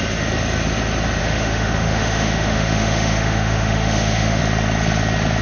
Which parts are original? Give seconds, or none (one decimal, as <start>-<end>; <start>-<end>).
0.0-1.2; 4.4-5.4